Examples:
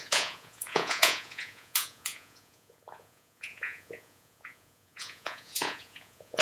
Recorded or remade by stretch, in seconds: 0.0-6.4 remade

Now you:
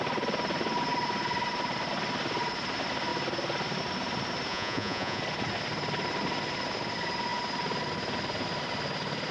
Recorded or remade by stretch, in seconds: 0.0-4.5 recorded; 4.5-5.2 remade; 5.2-9.3 recorded

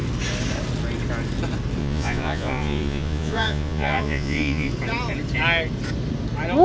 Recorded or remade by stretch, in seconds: 0.0-1.8 recorded; 1.8-4.7 remade; 4.7-6.6 recorded

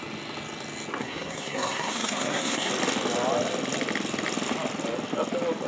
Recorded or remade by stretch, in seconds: 0.0-1.0 recorded; 1.0-2.7 remade; 2.7-5.7 recorded

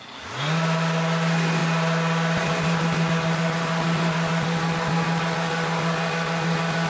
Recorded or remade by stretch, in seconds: 0.0-6.9 recorded

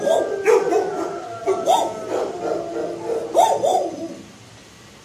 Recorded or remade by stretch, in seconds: 0.0-1.4 recorded; 1.4-2.0 remade; 2.0-5.0 recorded